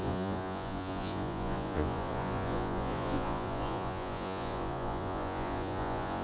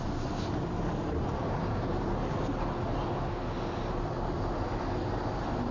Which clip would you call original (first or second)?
second